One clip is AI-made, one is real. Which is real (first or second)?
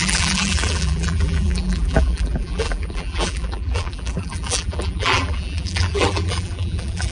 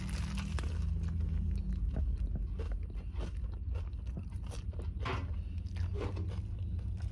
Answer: second